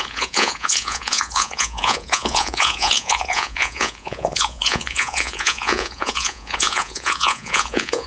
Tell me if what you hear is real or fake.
fake